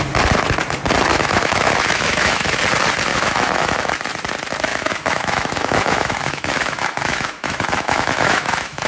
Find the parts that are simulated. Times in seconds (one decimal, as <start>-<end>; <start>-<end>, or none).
1.1-2.6; 3.1-3.9; 4.7-8.9